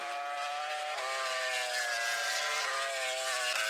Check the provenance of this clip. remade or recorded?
recorded